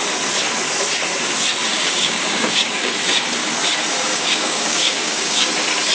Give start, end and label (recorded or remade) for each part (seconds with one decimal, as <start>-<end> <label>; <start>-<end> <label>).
0.0-1.7 recorded; 1.7-2.9 remade; 2.9-4.1 recorded; 4.1-5.5 remade; 5.5-5.9 recorded

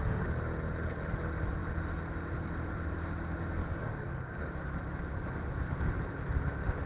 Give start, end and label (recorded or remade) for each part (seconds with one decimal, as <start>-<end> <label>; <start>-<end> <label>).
0.0-3.6 recorded; 3.6-4.5 remade; 4.5-6.9 recorded

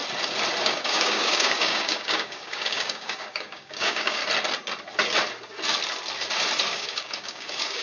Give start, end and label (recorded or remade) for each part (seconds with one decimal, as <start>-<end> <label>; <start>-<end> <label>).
0.0-0.6 recorded; 0.6-4.2 remade; 4.2-6.7 recorded; 6.7-7.8 remade

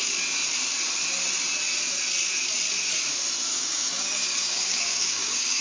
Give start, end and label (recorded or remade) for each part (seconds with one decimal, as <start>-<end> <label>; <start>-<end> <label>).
0.0-3.5 recorded; 3.5-5.6 remade